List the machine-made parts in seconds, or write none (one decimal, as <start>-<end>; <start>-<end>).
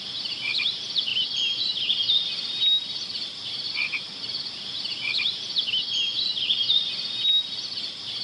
0.0-3.7; 4.6-5.5; 7.7-8.2